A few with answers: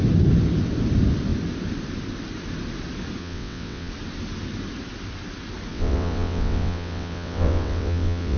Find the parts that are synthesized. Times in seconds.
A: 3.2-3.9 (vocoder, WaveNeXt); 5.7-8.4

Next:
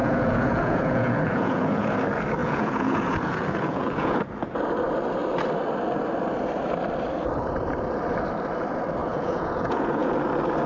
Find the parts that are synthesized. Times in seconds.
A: 0.0-1.9 (vocoder, Vocos); 2.4-4.2; 9.0-10.1

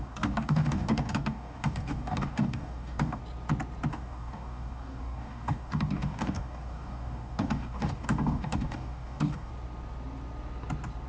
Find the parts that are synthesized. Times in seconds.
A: 0.0-3.2 (codec, DAC); 3.9-9.5

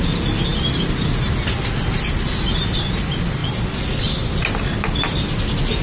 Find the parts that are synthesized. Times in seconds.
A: 3.4-4.0 (vocoder, BigVGAN v2)

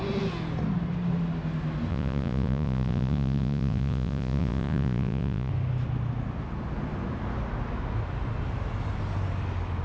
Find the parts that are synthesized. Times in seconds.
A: 1.9-5.5 (vocoder, Vocos)